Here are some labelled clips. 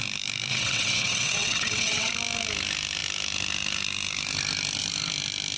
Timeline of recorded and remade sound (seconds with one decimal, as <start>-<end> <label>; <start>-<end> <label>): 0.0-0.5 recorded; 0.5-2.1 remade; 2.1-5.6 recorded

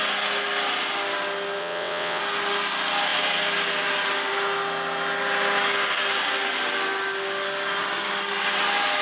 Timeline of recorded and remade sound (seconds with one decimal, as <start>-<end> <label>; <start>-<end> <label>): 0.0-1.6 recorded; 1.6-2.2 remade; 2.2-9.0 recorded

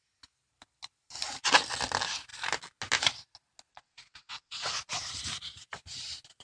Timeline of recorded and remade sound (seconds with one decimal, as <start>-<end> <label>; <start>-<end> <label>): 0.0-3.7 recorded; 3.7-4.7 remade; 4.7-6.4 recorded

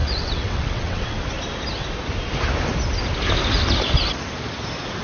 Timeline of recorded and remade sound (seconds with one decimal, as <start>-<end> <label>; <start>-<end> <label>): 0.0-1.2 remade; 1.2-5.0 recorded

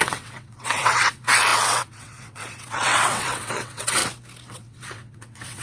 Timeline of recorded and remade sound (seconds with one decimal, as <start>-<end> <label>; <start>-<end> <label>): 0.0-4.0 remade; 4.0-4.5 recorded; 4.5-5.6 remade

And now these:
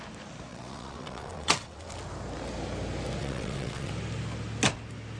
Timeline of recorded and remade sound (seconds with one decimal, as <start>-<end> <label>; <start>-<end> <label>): 0.0-0.5 recorded; 0.5-1.9 remade; 1.9-3.2 recorded; 3.2-3.9 remade; 3.9-5.2 recorded

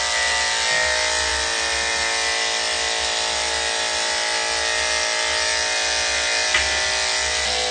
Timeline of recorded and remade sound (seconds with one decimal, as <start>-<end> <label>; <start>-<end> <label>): 0.0-7.7 recorded

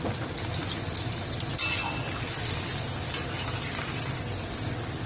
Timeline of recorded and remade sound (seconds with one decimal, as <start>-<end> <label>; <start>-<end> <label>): 0.0-5.1 recorded